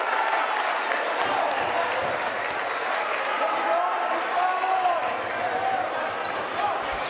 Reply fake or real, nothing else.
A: real